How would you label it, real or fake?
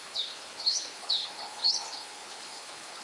fake